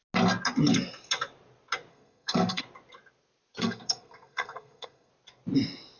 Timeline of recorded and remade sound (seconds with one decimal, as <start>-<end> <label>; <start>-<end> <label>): 0.0-1.9 recorded; 1.9-2.6 remade; 2.6-3.6 recorded; 3.6-5.1 remade; 5.1-6.0 recorded